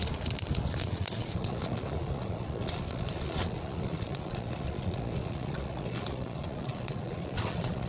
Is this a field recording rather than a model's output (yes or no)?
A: no